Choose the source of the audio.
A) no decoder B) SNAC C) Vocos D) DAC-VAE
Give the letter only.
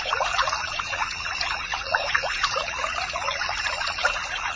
C